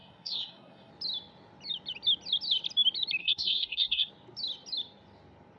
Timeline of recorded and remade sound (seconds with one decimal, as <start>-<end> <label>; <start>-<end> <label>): 0.0-0.9 remade; 0.9-3.2 recorded; 3.2-4.1 remade; 4.1-5.6 recorded